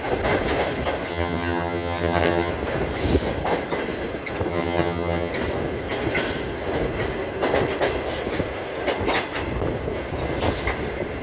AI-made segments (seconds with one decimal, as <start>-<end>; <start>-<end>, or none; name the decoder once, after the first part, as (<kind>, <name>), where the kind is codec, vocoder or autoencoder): 1.1-2.5 (vocoder, HiFi-GAN); 4.5-5.3